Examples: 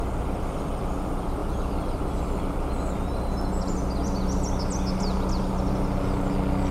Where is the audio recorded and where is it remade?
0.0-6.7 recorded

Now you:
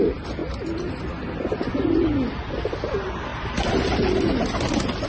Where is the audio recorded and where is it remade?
0.0-5.1 recorded

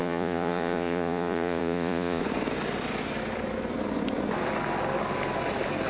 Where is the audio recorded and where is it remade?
0.0-2.2 remade; 2.2-5.9 recorded

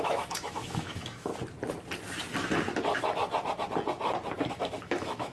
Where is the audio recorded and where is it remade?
0.0-1.3 remade; 1.3-4.5 recorded; 4.5-5.3 remade

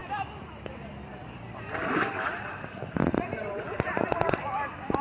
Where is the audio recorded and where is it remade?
0.0-1.6 remade; 1.6-3.4 recorded; 3.4-5.0 remade

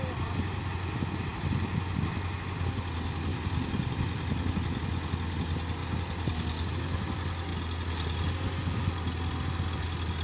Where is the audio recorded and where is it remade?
0.0-3.3 recorded; 3.3-4.5 remade; 4.5-10.2 recorded

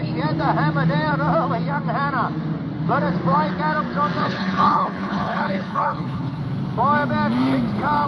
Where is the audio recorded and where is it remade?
0.0-4.2 recorded; 4.2-6.4 remade; 6.4-8.1 recorded

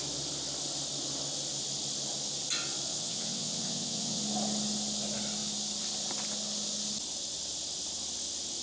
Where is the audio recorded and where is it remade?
0.0-2.9 recorded; 2.9-4.2 remade; 4.2-8.6 recorded